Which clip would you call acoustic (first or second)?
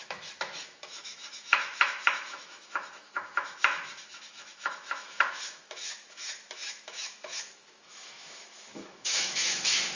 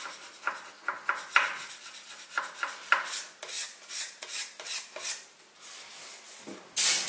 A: second